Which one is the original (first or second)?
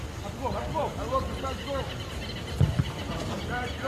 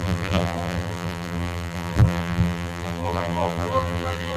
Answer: first